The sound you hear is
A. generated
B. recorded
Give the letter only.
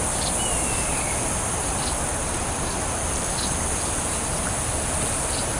B